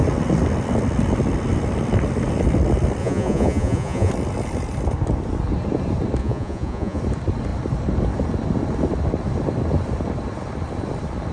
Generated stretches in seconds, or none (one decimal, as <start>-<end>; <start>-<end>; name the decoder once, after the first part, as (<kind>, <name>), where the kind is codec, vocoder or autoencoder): 3.0-4.1 (vocoder, Vocos); 6.2-7.0